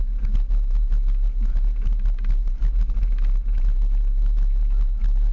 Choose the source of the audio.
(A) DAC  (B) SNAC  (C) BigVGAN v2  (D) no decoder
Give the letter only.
D